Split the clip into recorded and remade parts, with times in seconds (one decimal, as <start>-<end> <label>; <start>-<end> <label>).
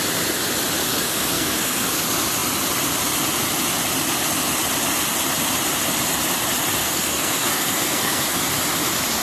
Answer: 0.0-0.8 recorded; 0.8-1.9 remade; 1.9-6.8 recorded; 6.8-8.5 remade; 8.5-9.2 recorded